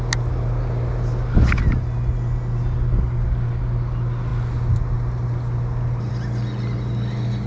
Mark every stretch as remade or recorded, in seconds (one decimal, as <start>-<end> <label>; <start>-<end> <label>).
0.0-7.5 recorded